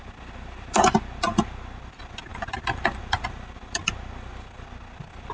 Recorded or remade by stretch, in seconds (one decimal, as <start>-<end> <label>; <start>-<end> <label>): 0.0-5.3 recorded